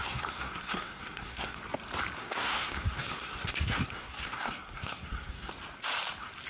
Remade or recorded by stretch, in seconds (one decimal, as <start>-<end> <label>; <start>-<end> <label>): 0.0-1.6 remade; 1.6-2.2 recorded; 2.2-5.5 remade; 5.5-6.5 recorded